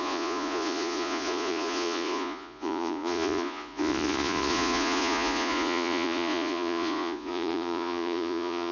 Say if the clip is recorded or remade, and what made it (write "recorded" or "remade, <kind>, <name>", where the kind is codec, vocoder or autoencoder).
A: remade, vocoder, Vocos